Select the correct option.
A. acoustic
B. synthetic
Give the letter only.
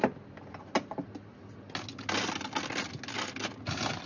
A